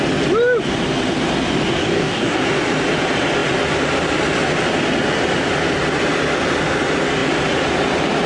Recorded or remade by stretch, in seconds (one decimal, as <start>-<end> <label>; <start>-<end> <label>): 0.0-1.8 recorded; 1.8-2.4 remade; 2.4-8.3 recorded